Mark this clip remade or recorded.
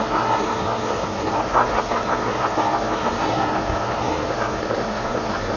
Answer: remade